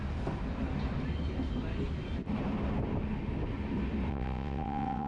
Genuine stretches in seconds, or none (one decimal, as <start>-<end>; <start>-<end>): 0.0-4.1